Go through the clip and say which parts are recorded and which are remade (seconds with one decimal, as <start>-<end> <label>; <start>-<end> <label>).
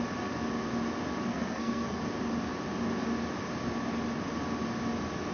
0.0-1.3 recorded; 1.3-2.0 remade; 2.0-5.3 recorded